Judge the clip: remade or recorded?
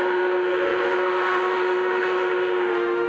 remade